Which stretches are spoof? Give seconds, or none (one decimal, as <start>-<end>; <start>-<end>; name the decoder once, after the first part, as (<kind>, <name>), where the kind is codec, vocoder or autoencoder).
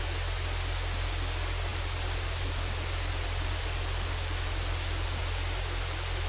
1.7-5.2 (vocoder, BigVGAN v2)